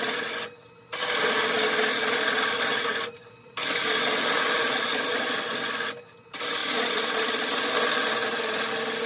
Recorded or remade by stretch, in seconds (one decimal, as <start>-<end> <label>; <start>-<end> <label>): 0.0-2.9 recorded; 2.9-3.5 remade; 3.5-6.6 recorded; 6.6-7.7 remade; 7.7-9.1 recorded